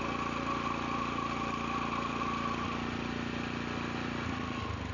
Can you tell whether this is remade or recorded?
recorded